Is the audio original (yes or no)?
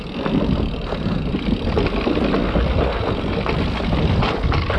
yes